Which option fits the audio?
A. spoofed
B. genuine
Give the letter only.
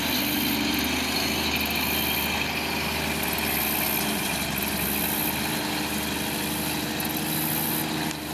B